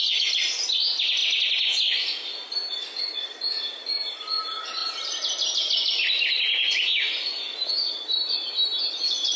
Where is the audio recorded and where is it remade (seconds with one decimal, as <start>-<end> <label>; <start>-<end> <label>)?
0.0-9.4 recorded